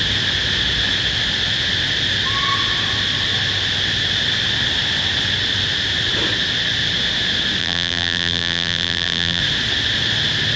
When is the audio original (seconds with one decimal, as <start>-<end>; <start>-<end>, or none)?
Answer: 0.0-7.6; 9.4-10.6